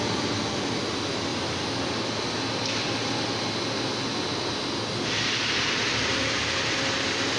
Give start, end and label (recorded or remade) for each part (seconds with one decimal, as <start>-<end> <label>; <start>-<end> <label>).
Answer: 0.0-7.4 recorded